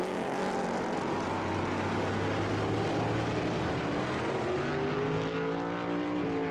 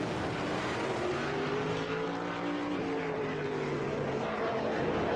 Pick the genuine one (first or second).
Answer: first